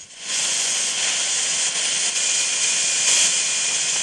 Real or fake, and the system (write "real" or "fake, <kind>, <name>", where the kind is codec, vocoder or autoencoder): fake, vocoder, Vocos